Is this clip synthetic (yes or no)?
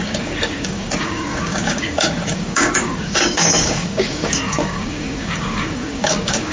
yes